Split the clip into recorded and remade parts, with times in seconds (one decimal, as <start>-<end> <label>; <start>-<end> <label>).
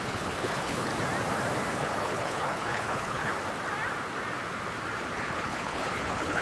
0.0-0.9 remade; 0.9-1.7 recorded; 1.7-3.3 remade; 3.3-5.2 recorded; 5.2-6.4 remade